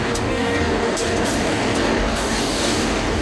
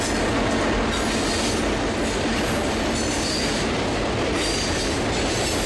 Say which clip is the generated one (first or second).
first